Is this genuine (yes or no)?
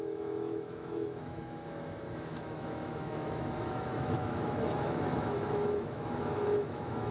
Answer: no